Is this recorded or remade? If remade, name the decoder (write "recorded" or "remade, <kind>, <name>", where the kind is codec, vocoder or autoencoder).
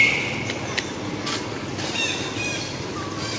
recorded